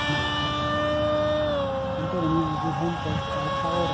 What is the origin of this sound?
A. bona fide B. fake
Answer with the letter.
A